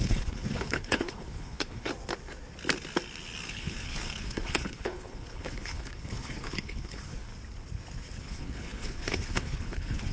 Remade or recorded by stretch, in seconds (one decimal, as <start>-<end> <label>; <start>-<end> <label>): 0.0-1.9 remade; 1.9-3.5 recorded; 3.5-7.3 remade; 7.3-8.2 recorded; 8.2-10.1 remade